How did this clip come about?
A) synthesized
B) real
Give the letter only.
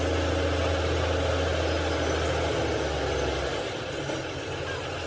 B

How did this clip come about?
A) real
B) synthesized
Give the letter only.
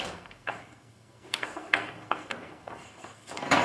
B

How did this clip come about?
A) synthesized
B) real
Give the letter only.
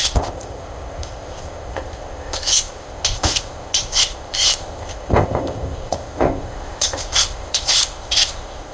A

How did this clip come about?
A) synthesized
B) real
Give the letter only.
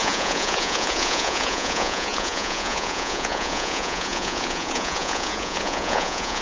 A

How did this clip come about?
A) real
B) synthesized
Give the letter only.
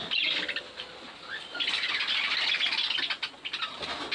A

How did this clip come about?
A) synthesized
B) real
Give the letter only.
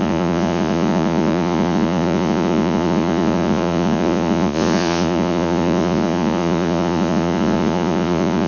A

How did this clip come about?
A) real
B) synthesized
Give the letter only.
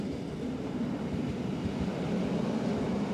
A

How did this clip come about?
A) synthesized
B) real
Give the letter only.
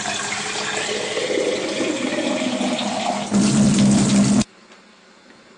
B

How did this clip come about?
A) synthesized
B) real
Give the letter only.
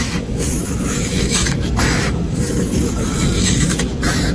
A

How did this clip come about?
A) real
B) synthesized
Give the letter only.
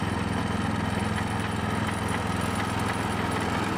A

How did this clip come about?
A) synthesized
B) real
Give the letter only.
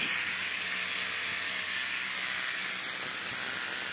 B